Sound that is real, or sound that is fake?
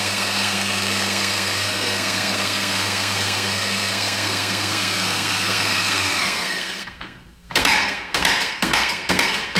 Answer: fake